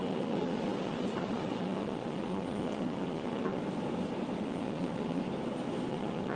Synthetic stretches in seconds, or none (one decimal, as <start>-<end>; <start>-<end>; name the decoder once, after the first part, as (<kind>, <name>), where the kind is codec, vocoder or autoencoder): 0.0-3.6 (vocoder, Vocos); 4.4-5.2; 5.9-6.4